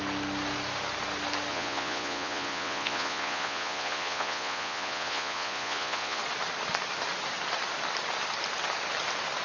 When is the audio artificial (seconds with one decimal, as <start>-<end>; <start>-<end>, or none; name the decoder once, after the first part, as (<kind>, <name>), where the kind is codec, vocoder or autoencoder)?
1.5-6.2 (vocoder, Vocos)

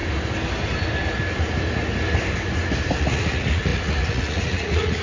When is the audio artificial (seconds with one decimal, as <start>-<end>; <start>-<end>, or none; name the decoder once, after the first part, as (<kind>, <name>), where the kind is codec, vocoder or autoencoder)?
3.0-5.0 (vocoder, Vocos)

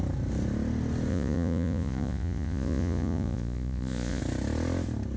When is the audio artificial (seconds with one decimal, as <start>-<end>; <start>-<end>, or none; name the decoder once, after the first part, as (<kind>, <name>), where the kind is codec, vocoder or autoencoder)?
1.1-4.2 (vocoder, Vocos)

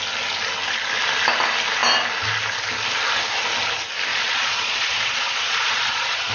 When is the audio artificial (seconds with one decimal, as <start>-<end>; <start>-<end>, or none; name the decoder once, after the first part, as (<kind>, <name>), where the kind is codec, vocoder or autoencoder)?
4.1-6.3 (vocoder, Vocos)

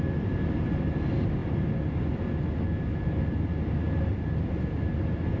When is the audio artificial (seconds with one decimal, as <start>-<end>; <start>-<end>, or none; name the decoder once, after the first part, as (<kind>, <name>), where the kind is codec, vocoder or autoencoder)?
none

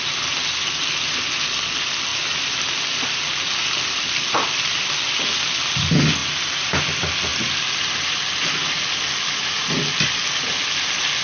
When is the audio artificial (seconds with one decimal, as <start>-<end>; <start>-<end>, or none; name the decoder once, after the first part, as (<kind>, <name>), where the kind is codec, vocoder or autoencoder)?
none